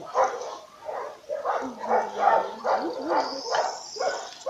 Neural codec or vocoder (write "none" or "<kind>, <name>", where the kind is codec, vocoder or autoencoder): none